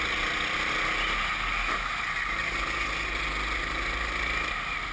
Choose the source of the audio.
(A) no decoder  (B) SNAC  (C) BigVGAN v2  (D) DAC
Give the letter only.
A